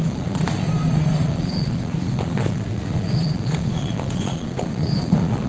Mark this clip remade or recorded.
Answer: remade